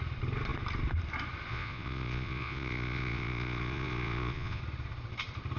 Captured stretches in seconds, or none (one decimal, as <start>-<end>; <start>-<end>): 0.0-1.5; 4.6-5.6